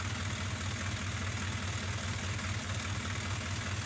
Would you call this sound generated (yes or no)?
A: no